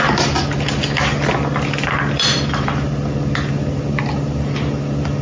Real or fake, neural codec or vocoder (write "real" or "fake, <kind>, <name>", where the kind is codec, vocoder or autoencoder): real